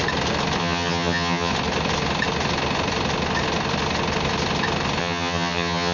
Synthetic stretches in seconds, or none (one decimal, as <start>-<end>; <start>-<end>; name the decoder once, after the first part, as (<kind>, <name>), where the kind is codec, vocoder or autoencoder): 0.6-1.5 (vocoder, HiFi-GAN); 5.0-5.9